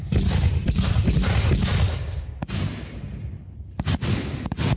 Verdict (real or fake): real